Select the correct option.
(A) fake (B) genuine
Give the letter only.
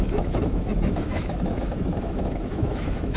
A